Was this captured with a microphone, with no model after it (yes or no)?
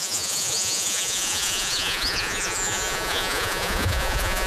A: no